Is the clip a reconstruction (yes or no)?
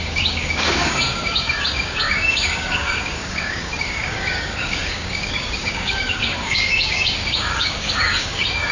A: yes